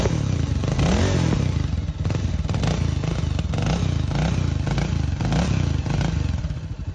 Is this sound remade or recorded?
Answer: recorded